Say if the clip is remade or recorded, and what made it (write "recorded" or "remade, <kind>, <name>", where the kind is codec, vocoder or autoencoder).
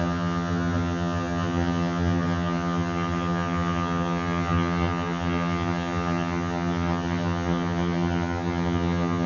remade, vocoder, HiFi-GAN